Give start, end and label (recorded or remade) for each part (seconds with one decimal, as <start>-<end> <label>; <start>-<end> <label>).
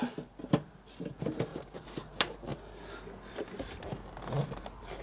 0.0-5.0 recorded